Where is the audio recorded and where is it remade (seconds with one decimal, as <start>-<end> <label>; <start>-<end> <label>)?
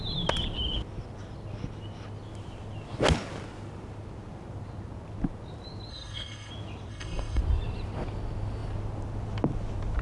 0.0-5.9 recorded; 5.9-6.5 remade; 6.5-6.9 recorded; 6.9-7.4 remade; 7.4-10.0 recorded